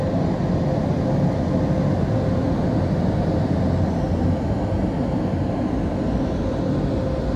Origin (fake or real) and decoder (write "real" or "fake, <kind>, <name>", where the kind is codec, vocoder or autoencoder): real